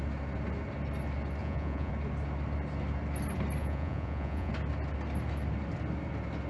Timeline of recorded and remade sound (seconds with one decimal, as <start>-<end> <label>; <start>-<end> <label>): 0.0-1.4 recorded; 1.4-1.9 remade; 1.9-3.6 recorded; 3.6-4.5 remade; 4.5-6.5 recorded